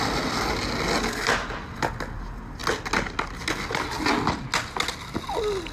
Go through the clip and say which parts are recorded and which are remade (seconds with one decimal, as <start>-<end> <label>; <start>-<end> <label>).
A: 0.0-5.7 recorded

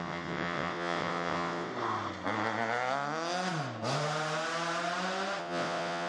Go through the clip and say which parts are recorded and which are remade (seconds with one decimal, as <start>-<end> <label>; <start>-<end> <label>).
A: 0.0-1.7 remade; 1.7-5.4 recorded; 5.4-6.1 remade

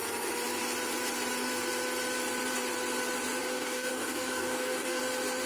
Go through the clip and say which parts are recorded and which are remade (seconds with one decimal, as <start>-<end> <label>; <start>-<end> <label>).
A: 0.0-3.4 recorded; 3.4-5.0 remade; 5.0-5.5 recorded

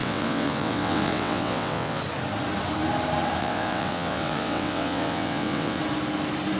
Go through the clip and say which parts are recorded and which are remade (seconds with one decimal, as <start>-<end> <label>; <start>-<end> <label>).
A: 0.0-2.0 remade; 2.0-3.4 recorded; 3.4-5.8 remade; 5.8-6.6 recorded

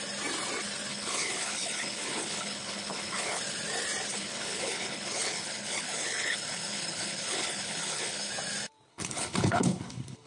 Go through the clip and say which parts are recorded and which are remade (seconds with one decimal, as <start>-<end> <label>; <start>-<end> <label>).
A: 0.0-0.9 recorded; 0.9-3.4 remade; 3.4-4.1 recorded; 4.1-8.3 remade; 8.3-8.9 recorded; 8.9-10.3 remade

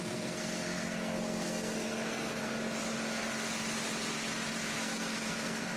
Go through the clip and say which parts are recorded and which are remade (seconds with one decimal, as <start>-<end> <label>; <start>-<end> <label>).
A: 0.0-2.5 remade; 2.5-4.7 recorded; 4.7-5.8 remade

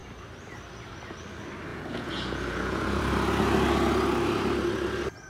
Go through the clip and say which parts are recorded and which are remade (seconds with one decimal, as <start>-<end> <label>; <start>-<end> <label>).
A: 0.0-1.7 recorded; 1.7-3.0 remade; 3.0-5.3 recorded

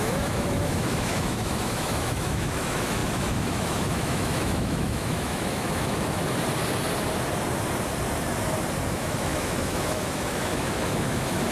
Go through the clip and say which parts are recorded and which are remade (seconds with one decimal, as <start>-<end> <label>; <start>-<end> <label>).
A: 0.0-6.2 remade; 6.2-8.9 recorded; 8.9-11.5 remade